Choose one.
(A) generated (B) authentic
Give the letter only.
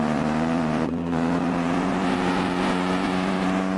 A